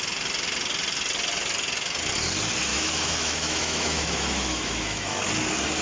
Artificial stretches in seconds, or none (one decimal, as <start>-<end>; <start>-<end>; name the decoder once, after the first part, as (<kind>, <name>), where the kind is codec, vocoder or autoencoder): 2.7-5.2 (autoencoder, DAC-VAE)